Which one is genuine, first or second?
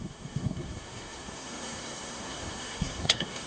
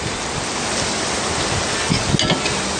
second